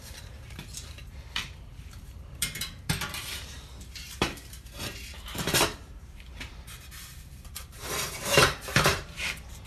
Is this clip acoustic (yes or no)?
no